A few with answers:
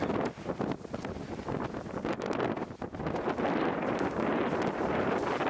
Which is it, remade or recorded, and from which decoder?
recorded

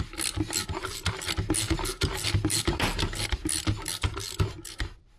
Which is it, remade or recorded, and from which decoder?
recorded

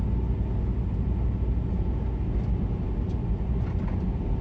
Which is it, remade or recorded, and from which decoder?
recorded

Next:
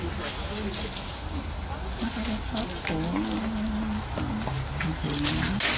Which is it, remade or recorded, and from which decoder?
recorded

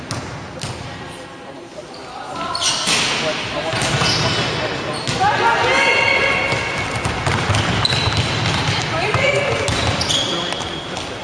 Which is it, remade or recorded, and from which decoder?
recorded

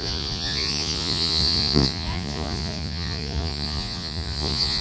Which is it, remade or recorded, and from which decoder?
remade, vocoder, Vocos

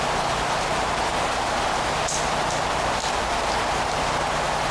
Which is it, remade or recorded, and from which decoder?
recorded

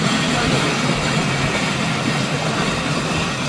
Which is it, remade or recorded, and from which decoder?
recorded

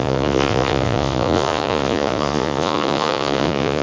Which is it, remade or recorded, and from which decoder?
remade, vocoder, Vocos